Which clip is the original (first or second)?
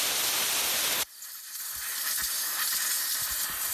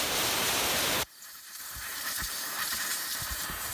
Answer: first